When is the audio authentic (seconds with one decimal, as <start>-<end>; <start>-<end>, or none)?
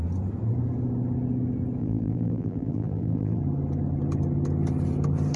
0.0-1.8; 3.4-5.4